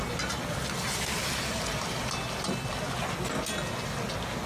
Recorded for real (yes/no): yes